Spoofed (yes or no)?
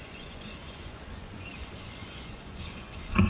yes